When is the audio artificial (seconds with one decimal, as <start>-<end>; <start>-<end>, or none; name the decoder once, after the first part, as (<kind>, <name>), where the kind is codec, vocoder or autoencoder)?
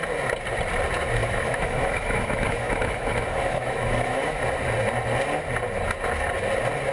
1.2-4.4 (autoencoder, DAC-VAE)